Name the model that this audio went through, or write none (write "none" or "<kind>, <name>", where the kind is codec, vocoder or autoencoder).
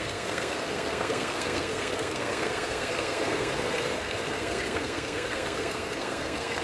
codec, SNAC